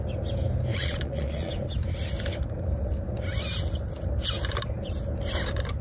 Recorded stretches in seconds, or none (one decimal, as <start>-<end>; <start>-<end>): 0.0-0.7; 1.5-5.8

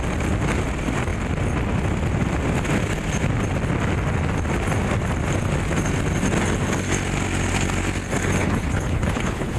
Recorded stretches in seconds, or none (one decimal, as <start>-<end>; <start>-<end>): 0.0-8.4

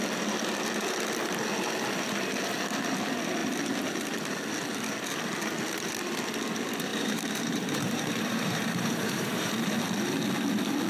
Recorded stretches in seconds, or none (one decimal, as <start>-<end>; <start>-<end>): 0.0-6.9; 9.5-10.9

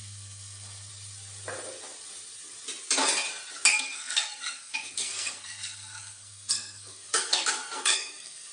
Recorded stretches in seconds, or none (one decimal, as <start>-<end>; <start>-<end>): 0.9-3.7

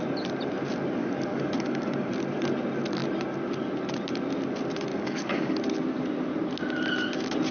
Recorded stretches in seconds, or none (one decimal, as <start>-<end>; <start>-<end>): 0.0-1.0; 2.1-4.9; 5.6-7.5